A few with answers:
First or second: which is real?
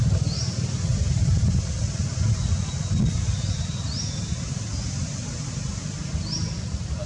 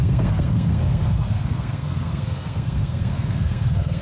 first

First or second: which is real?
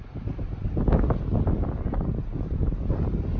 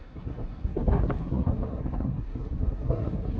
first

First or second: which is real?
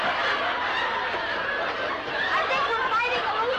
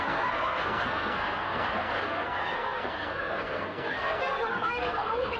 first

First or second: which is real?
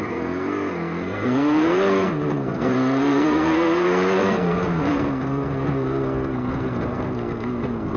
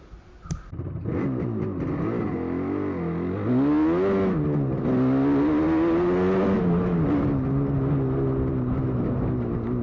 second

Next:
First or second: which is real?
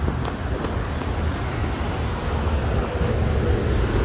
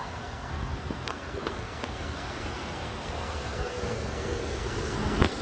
first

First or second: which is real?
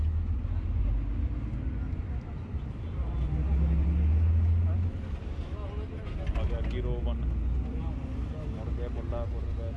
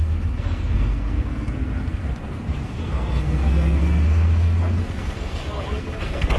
first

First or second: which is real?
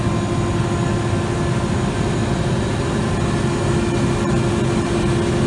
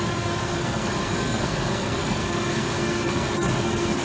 first